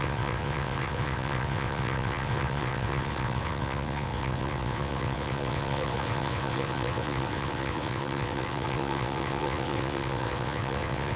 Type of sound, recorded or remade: remade